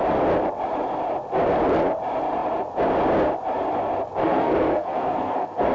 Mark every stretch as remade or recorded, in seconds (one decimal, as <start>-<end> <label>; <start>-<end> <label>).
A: 0.0-4.2 recorded; 4.2-5.7 remade

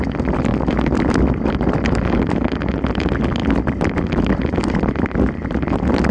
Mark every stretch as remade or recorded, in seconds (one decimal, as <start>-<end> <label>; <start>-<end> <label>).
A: 0.0-6.1 recorded